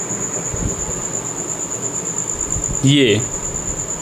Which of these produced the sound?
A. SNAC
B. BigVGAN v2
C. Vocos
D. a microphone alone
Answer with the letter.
D